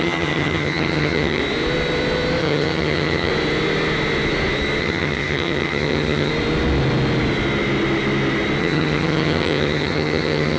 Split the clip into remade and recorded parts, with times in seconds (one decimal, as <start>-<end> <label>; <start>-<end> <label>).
0.0-1.4 remade; 1.4-2.4 recorded; 2.4-3.3 remade; 3.3-4.8 recorded; 4.8-6.3 remade; 6.3-8.6 recorded; 8.6-10.6 remade